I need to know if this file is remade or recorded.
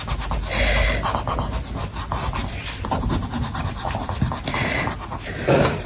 recorded